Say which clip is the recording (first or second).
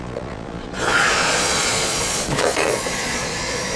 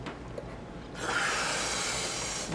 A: second